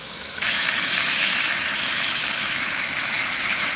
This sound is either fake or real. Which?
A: fake